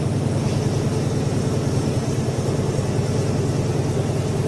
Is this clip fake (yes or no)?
no